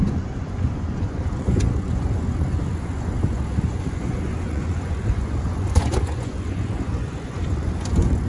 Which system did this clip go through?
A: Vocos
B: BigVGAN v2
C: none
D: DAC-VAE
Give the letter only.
A